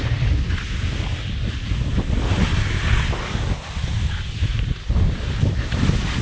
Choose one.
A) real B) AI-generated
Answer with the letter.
A